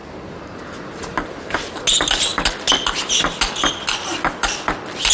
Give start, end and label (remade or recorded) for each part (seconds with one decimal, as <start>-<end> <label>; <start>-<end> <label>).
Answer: 0.0-5.1 recorded